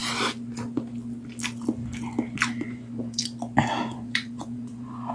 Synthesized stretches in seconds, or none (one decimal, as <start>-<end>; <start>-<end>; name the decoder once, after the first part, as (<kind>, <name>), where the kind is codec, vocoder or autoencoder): 2.6-3.2 (vocoder, Vocos); 3.8-5.1